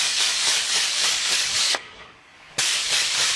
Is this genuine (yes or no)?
no